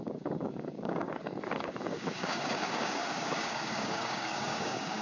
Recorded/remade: remade